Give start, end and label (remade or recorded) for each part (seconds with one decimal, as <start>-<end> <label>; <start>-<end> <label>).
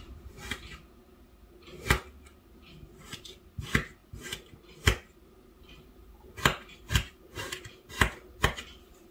0.0-9.1 recorded